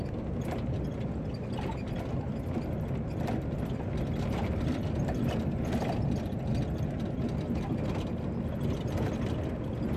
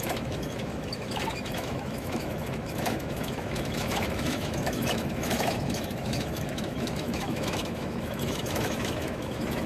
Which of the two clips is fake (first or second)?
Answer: second